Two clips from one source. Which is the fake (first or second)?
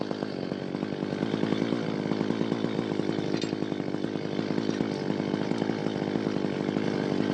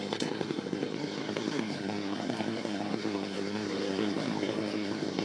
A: second